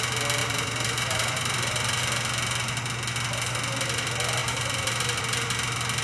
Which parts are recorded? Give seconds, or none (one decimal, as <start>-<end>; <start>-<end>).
0.0-0.4; 2.0-4.4; 5.2-6.0